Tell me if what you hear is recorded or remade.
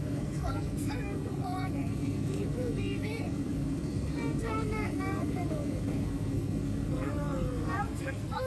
remade